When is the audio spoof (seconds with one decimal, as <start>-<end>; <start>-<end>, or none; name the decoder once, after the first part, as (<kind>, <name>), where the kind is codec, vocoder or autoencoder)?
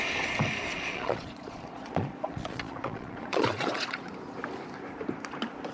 0.7-4.1 (vocoder, Vocos)